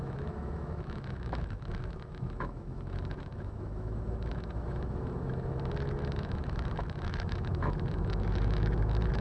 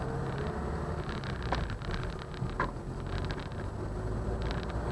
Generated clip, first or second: first